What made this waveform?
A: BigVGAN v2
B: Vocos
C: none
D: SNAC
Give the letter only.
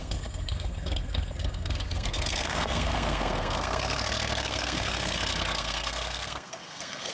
D